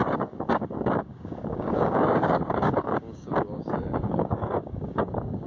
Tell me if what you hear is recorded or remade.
remade